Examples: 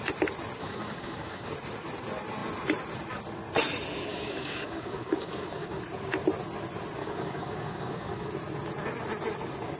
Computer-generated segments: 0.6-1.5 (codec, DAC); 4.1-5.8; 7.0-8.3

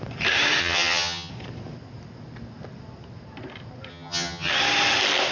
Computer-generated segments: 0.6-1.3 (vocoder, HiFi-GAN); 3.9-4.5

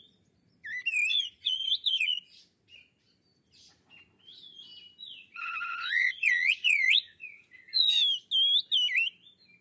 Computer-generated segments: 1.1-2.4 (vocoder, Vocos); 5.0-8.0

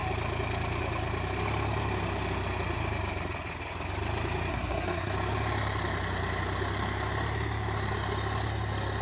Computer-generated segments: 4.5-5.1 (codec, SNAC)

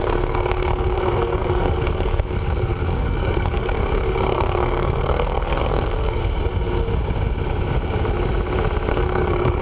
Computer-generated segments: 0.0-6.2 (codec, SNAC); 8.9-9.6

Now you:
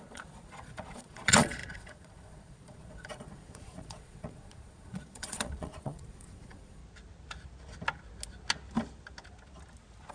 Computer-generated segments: 0.0-6.8 (vocoder, Vocos)